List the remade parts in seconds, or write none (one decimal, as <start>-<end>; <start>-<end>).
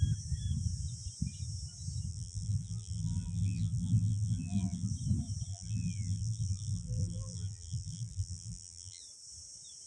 2.1-4.9; 5.5-9.0